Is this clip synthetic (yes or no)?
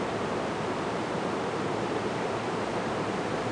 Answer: yes